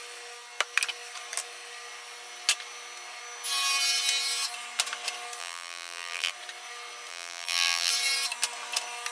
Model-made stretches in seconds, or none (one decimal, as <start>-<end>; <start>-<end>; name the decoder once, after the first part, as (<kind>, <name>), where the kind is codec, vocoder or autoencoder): 5.4-6.3 (vocoder, BigVGAN v2); 7.1-7.9